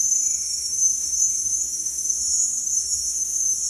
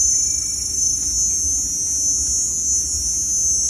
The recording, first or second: second